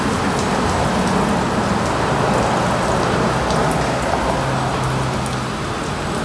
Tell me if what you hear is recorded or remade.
recorded